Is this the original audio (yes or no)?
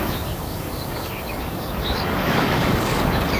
no